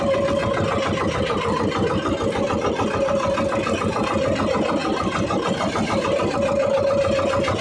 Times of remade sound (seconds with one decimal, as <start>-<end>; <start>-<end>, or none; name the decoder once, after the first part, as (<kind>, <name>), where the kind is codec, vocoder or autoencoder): none